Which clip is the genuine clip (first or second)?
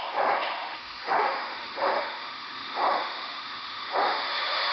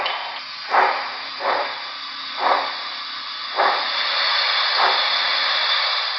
second